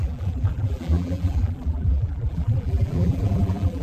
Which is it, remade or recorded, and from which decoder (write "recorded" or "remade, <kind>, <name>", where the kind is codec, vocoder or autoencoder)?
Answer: remade, vocoder, BigVGAN v2